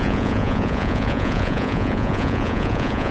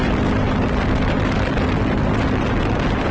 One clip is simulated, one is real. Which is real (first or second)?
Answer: second